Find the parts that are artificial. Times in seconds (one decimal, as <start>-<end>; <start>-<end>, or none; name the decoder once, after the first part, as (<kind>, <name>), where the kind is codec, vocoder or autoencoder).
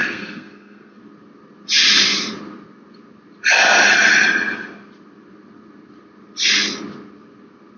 0.0-1.0 (codec, SNAC)